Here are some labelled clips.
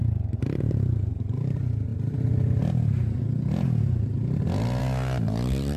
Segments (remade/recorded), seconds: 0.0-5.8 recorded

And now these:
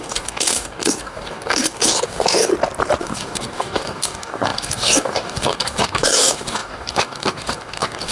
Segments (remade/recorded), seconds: 0.0-2.5 remade; 2.5-3.0 recorded; 3.0-8.1 remade